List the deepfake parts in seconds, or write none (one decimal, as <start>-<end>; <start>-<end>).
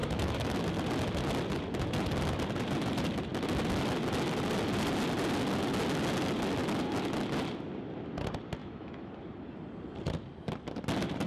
0.0-0.6; 8.6-9.1